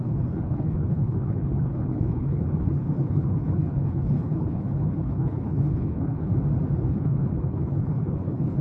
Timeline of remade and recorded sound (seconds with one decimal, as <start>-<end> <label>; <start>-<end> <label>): 0.0-6.3 remade; 6.3-6.9 recorded; 6.9-8.6 remade